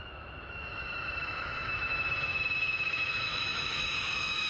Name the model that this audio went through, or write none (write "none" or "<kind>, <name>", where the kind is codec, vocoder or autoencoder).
autoencoder, DAC-VAE